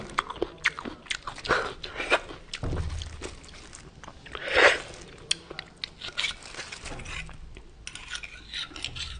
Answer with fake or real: real